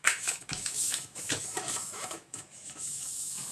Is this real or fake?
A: fake